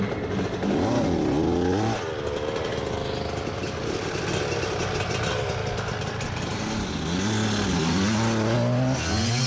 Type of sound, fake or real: real